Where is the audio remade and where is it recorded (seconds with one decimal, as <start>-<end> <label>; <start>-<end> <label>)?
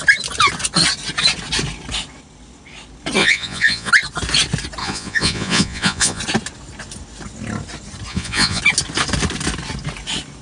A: 0.0-3.2 recorded; 3.2-3.9 remade; 3.9-4.8 recorded; 4.8-6.2 remade; 6.2-8.1 recorded; 8.1-8.6 remade; 8.6-10.4 recorded